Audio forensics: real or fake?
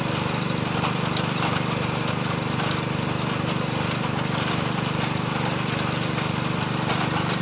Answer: real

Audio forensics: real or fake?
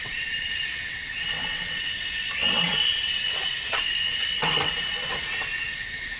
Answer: fake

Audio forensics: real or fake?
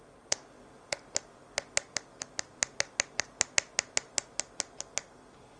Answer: real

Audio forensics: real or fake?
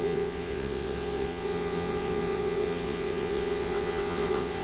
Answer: fake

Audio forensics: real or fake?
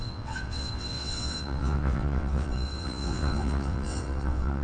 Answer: fake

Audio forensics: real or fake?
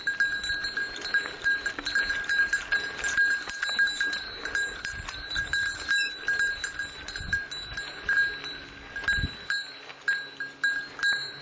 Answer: real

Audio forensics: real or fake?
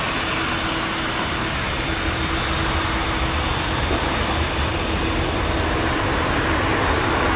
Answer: real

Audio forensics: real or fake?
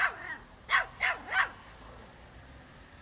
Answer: real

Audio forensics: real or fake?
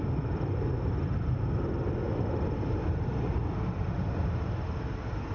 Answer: real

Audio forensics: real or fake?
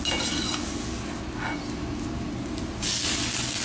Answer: real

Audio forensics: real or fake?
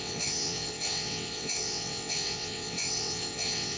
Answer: fake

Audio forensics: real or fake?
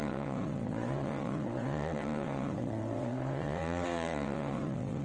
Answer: fake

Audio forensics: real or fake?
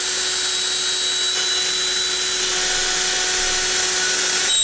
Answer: real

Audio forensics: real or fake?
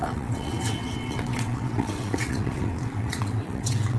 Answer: fake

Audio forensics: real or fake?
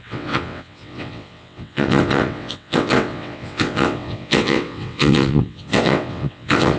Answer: fake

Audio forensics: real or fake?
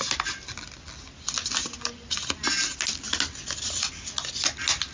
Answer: real